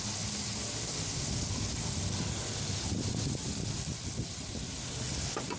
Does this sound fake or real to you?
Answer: real